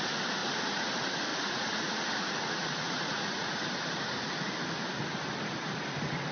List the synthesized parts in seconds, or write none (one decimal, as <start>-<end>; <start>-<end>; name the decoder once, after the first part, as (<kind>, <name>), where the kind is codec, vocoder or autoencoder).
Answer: 0.4-0.9 (vocoder, Vocos); 1.3-3.6